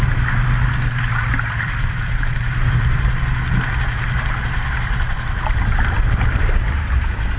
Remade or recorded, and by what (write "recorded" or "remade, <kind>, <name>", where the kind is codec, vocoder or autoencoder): recorded